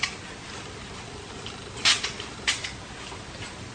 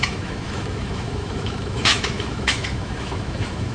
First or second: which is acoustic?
first